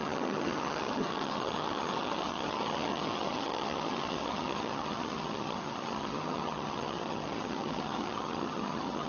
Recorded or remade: remade